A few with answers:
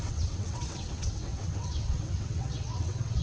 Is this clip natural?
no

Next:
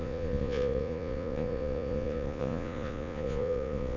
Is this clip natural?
no